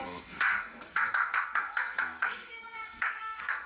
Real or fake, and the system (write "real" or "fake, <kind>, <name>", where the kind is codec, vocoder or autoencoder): fake, codec, SNAC